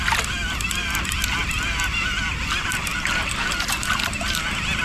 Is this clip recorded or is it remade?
recorded